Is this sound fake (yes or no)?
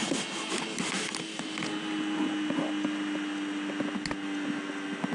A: no